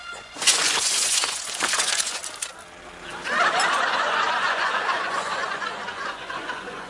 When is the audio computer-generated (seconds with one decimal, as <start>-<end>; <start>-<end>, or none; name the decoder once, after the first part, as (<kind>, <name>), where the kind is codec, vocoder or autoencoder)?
0.0-2.2 (vocoder, Vocos); 3.7-6.9